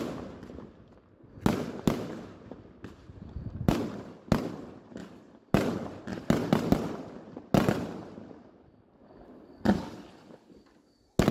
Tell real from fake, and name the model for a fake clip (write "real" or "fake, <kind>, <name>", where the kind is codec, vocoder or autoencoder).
real